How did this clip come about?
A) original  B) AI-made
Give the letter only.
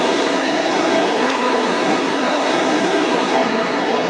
B